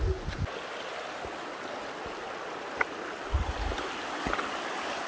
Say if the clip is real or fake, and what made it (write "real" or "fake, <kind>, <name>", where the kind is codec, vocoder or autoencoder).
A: real